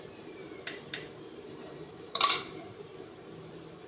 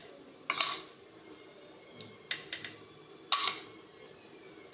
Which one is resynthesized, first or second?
first